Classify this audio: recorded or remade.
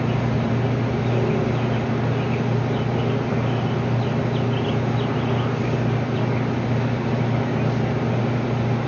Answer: recorded